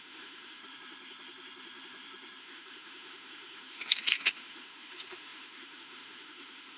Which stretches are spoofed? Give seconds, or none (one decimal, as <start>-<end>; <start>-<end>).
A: 0.0-0.6; 2.4-6.8